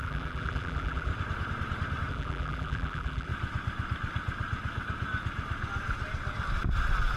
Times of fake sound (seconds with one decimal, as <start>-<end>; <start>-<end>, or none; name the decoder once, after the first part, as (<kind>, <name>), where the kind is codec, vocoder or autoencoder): 0.0-1.1 (vocoder, BigVGAN v2); 2.1-3.3